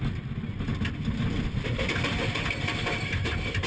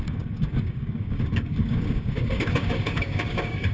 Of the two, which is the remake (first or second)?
second